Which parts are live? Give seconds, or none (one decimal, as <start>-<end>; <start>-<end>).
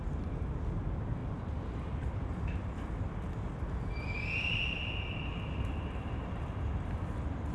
0.0-7.5